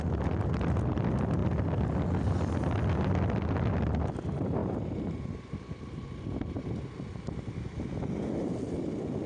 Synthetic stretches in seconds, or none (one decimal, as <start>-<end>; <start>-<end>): none